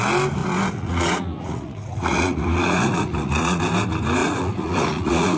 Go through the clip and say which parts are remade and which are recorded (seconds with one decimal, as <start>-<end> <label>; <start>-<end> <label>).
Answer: 0.0-0.4 recorded; 0.4-3.6 remade; 3.6-4.2 recorded; 4.2-5.4 remade